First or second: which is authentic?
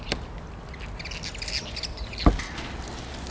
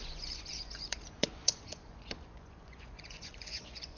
first